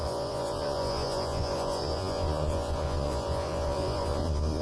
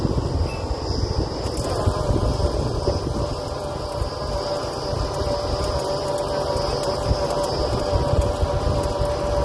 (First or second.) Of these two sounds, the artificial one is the first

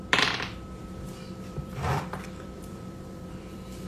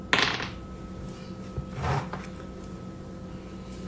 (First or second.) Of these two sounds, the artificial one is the first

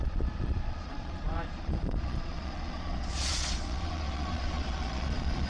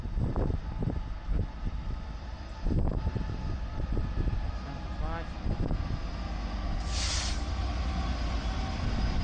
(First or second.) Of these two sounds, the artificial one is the first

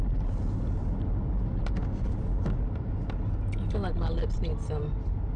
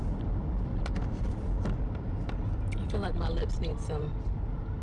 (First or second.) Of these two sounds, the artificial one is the second